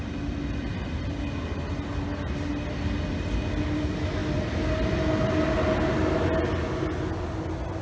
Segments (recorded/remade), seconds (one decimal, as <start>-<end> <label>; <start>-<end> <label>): 0.0-7.8 recorded